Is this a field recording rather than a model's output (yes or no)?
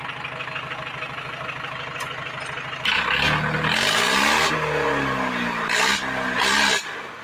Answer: yes